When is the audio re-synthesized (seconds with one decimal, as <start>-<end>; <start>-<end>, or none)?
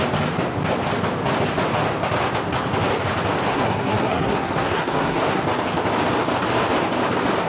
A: 3.5-5.4